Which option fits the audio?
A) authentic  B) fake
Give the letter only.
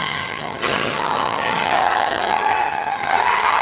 B